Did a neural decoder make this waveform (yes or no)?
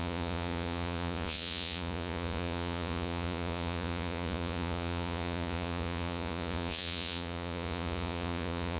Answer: yes